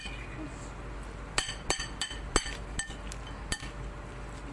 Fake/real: real